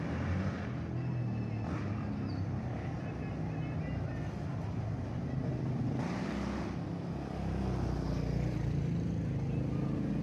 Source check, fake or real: real